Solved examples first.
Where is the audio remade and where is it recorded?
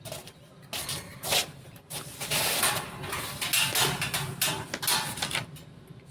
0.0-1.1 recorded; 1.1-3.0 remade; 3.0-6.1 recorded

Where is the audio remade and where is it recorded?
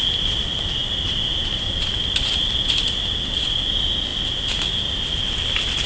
0.0-5.9 recorded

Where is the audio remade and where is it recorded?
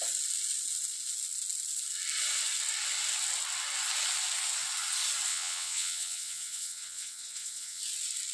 0.0-5.3 recorded; 5.3-7.8 remade; 7.8-8.3 recorded